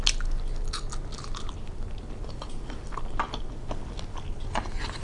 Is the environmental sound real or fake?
real